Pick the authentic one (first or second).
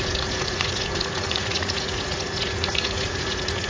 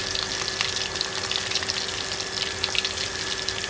second